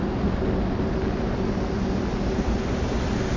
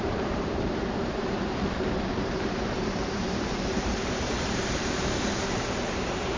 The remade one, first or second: second